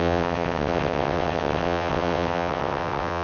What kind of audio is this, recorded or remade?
remade